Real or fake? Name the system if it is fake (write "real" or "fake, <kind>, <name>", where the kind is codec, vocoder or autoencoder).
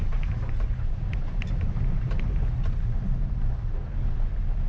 real